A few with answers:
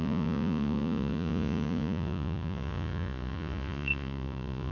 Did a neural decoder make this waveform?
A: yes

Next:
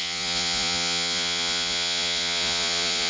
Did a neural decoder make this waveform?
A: yes